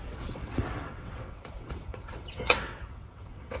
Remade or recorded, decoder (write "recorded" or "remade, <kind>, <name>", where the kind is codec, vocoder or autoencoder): remade, vocoder, WaveNeXt